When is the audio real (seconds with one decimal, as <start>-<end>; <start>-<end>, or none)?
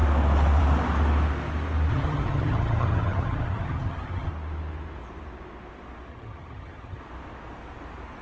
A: 0.0-1.9; 4.3-6.1; 7.0-8.2